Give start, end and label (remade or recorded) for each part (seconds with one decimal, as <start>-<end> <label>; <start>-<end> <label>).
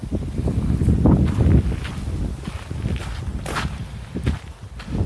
0.0-3.3 recorded; 3.3-3.8 remade; 3.8-5.1 recorded